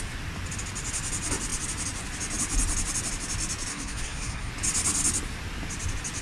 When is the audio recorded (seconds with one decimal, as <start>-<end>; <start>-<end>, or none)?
0.0-3.7; 4.5-6.2